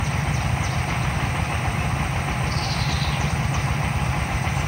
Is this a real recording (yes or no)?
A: yes